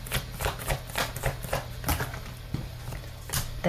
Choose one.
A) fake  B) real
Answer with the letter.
B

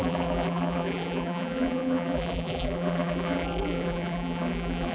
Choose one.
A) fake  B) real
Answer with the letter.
A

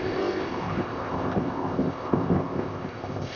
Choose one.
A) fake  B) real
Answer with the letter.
A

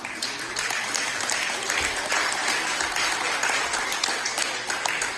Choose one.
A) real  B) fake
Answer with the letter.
B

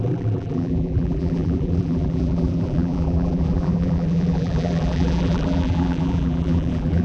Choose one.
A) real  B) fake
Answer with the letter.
B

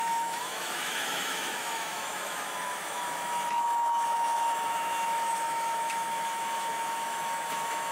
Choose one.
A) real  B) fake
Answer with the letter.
B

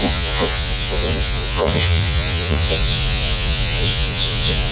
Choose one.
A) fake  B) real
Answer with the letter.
A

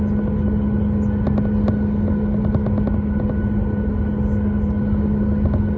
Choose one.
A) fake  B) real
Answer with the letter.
B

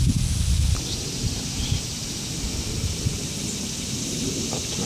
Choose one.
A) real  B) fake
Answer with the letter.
A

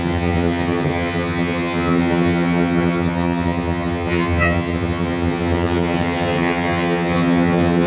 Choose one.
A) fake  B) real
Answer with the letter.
A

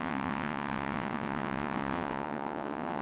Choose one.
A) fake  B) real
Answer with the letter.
A